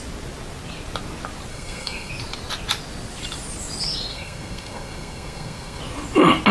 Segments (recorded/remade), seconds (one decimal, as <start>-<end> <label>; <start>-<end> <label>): 0.0-1.5 recorded; 1.5-2.1 remade; 2.1-4.1 recorded; 4.1-5.8 remade; 5.8-6.5 recorded